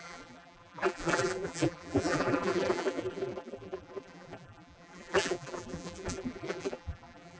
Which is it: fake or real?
fake